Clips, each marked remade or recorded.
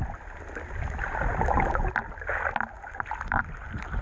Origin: recorded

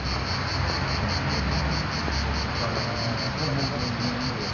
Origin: recorded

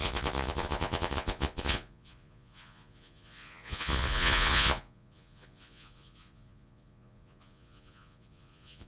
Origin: remade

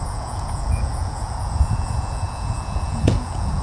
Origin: remade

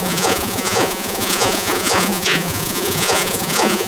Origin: remade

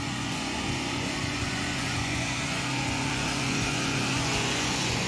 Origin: remade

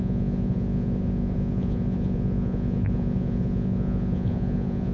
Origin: remade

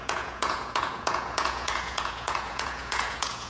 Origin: remade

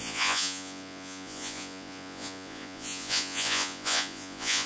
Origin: remade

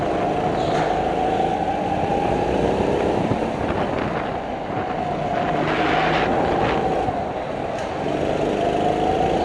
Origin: recorded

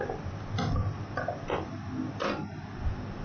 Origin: recorded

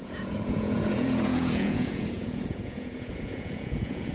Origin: remade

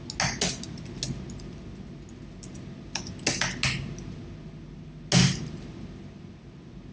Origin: recorded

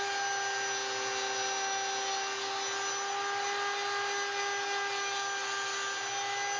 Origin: recorded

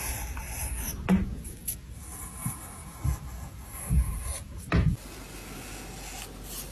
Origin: recorded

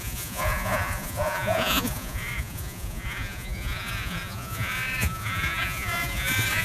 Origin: remade